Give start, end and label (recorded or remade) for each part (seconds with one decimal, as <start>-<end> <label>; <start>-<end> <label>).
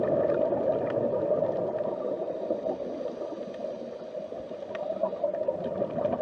0.0-6.2 recorded